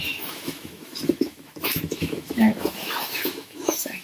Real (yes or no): no